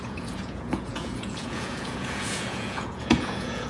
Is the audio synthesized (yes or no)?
yes